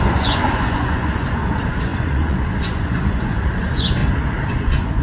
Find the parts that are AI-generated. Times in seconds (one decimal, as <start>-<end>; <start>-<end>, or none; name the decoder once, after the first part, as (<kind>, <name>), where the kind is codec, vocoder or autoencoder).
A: 0.0-4.0 (vocoder, Vocos); 4.5-5.0